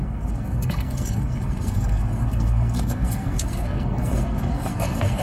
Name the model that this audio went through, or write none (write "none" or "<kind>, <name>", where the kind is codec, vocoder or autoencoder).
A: codec, SNAC